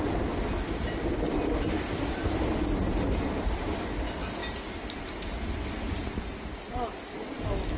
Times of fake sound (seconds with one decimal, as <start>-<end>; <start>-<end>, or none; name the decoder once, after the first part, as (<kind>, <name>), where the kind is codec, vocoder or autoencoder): none

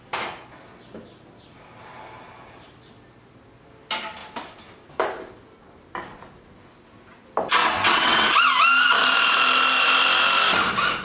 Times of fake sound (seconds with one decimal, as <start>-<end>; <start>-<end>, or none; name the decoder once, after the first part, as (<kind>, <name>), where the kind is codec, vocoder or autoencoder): 7.6-8.3 (vocoder, WaveNeXt)

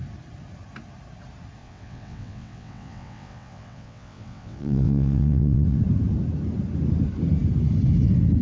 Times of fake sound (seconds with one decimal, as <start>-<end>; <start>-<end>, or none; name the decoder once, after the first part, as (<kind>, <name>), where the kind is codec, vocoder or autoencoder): 1.6-5.8 (vocoder, WaveNeXt)